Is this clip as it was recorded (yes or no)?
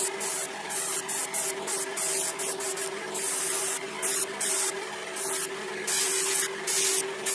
yes